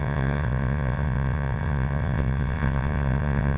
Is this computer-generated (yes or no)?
yes